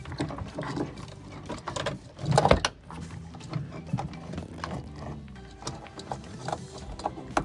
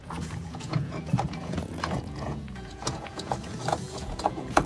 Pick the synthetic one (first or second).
second